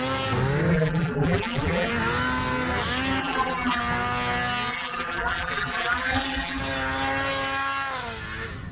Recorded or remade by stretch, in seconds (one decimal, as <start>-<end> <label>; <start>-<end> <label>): 0.0-0.7 recorded; 0.7-1.9 remade; 1.9-3.2 recorded; 3.2-3.8 remade; 3.8-4.7 recorded; 4.7-6.6 remade; 6.6-8.7 recorded